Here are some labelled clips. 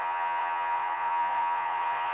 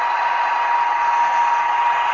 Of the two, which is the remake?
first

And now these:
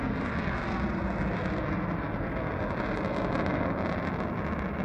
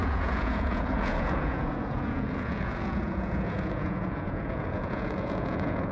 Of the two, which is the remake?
second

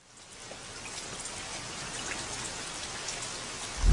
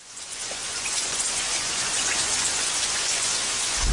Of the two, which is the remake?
second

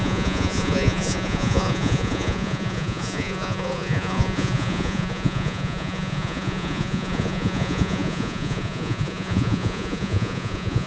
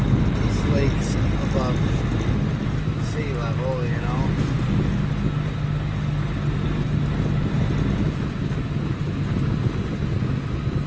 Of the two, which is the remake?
first